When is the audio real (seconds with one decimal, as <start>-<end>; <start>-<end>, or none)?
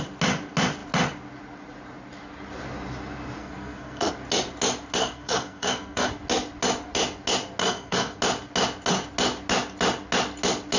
0.0-3.4; 4.1-5.0; 6.1-7.6; 8.2-10.8